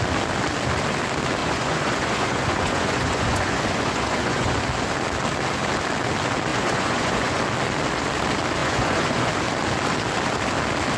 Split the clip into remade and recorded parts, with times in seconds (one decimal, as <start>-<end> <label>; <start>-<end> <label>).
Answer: 0.0-1.4 recorded; 1.4-4.6 remade; 4.6-6.5 recorded; 6.5-7.4 remade; 7.4-8.6 recorded; 8.6-9.3 remade; 9.3-11.0 recorded